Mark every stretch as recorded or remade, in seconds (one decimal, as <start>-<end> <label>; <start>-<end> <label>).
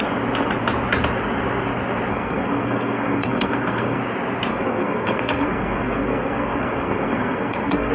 0.0-2.1 recorded; 2.1-4.0 remade; 4.0-4.5 recorded; 4.5-7.9 remade